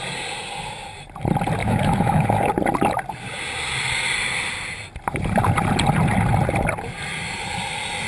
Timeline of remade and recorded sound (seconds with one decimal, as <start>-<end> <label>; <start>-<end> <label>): 0.0-1.6 recorded; 1.6-2.5 remade; 2.5-8.1 recorded